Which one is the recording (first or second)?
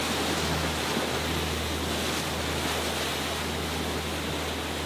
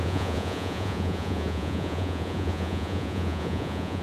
first